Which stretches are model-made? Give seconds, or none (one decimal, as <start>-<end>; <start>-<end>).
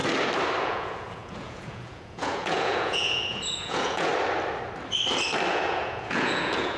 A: 0.6-4.1; 5.5-6.8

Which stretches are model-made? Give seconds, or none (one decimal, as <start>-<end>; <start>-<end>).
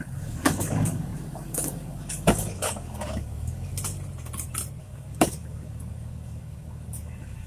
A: 0.0-3.7; 4.8-7.5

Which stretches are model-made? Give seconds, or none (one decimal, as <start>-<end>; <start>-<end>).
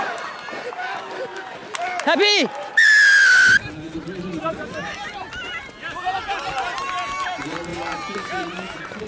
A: none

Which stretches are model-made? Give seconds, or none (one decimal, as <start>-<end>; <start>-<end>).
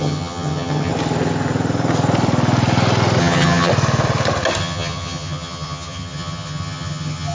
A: 0.0-0.9; 3.2-3.7; 4.6-7.3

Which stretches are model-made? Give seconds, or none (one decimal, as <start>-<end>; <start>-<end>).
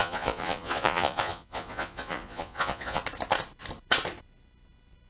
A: 0.0-3.0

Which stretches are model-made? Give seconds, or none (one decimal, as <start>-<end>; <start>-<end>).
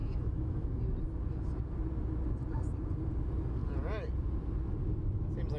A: 0.0-0.8